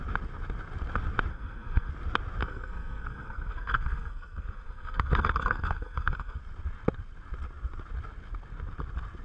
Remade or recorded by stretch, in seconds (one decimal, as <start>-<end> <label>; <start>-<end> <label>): 0.0-1.3 recorded; 1.3-1.9 remade; 1.9-2.4 recorded; 2.4-6.4 remade; 6.4-9.2 recorded